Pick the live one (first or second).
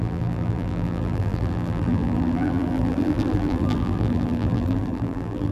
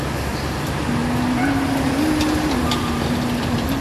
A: second